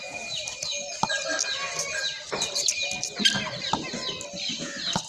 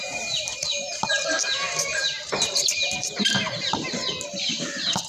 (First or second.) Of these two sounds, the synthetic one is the second